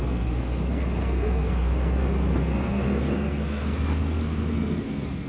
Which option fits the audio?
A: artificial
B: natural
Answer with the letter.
A